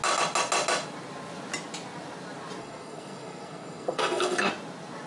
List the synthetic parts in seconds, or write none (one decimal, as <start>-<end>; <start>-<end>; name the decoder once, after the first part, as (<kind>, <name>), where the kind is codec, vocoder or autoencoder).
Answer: 2.6-4.5 (codec, SNAC)